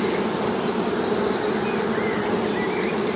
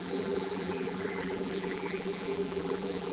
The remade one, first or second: second